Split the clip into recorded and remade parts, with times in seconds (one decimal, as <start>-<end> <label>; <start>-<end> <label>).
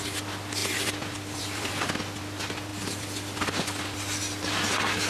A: 0.0-0.6 recorded; 0.6-1.7 remade; 1.7-5.1 recorded